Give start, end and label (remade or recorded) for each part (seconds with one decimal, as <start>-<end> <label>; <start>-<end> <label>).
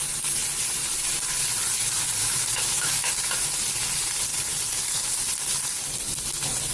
0.0-2.2 recorded; 2.2-3.1 remade; 3.1-6.7 recorded